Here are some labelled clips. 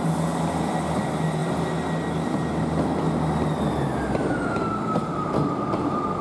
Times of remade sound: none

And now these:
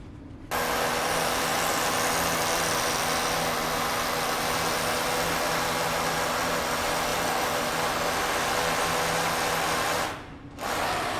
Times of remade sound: none

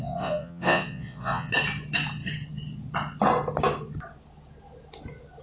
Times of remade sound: 0.0-1.5 (vocoder, Vocos)

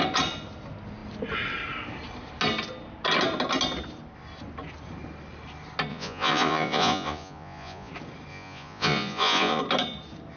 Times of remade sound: 5.9-7.9 (vocoder, Vocos); 8.3-9.6

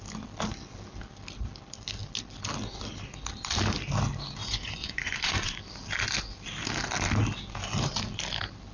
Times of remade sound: 4.4-5.6 (vocoder, Vocos)

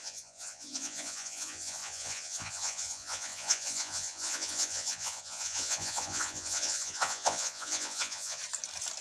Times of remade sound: 0.0-8.4 (vocoder, Vocos)

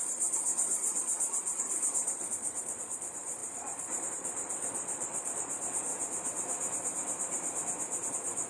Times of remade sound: 0.0-5.9 (vocoder, Vocos); 8.1-8.5